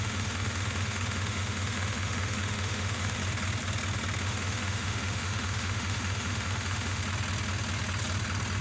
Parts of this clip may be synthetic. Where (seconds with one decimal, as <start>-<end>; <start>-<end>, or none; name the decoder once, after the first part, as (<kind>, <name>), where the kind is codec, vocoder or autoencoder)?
0.0-3.2 (autoencoder, DAC-VAE); 4.2-7.0